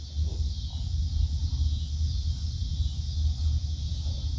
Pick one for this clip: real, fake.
real